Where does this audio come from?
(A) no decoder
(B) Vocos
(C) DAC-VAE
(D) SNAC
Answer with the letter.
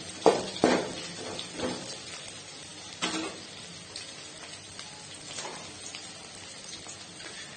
A